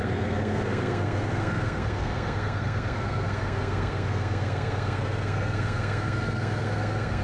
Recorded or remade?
remade